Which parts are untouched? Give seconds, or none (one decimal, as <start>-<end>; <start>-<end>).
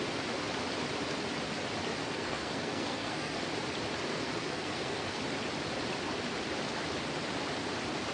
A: 0.0-2.0; 3.4-4.1; 5.2-8.1